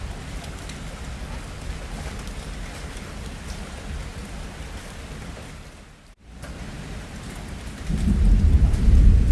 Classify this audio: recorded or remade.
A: recorded